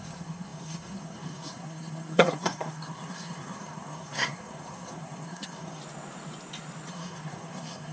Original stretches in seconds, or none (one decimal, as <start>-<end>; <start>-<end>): 5.8-6.9